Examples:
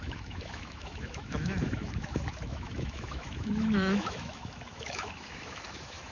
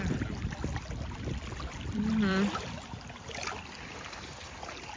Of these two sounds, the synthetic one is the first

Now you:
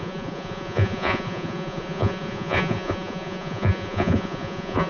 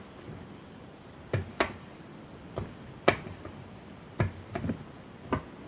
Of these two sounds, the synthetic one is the first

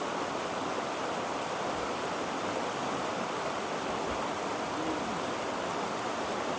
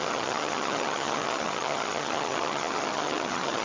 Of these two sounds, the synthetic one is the second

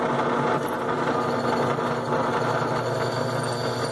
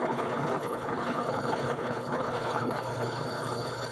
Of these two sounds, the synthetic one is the second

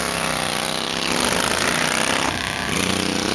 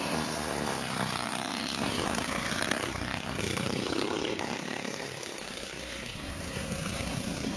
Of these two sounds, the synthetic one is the second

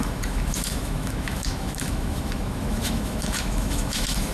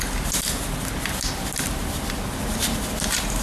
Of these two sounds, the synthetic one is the first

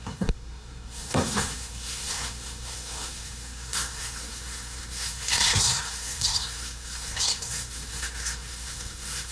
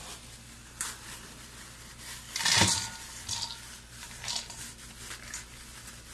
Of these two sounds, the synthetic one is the first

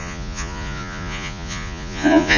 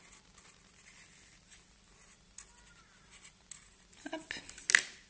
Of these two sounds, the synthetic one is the first